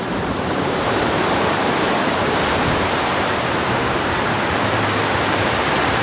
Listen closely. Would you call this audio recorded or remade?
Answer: remade